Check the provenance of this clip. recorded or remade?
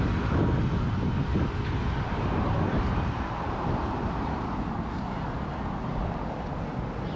recorded